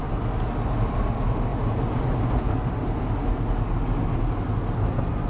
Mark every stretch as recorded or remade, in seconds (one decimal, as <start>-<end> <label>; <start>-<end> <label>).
0.0-5.3 recorded